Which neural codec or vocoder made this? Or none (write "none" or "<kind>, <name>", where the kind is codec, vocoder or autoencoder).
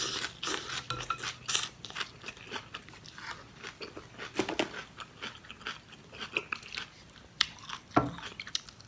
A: none